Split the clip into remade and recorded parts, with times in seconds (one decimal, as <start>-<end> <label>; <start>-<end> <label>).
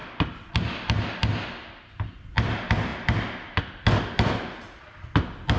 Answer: 0.0-5.6 recorded